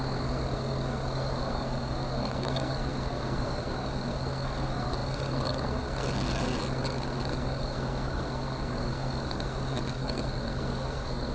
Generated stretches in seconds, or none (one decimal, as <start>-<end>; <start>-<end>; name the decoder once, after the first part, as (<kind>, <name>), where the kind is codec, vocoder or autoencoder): 0.0-11.3 (codec, SNAC)